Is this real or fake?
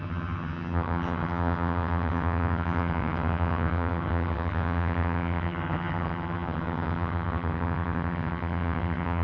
fake